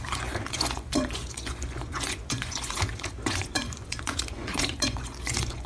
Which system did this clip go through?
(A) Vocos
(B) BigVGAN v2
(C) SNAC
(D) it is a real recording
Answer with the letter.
A